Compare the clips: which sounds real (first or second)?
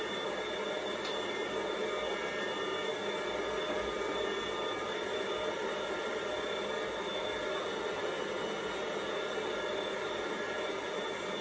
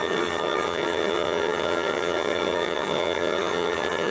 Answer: first